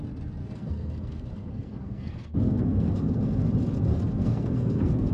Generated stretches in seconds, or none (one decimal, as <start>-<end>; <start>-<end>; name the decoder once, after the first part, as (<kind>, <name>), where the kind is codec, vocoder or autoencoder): 0.4-3.5 (codec, SNAC); 3.9-5.1